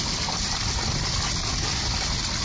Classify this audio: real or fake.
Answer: real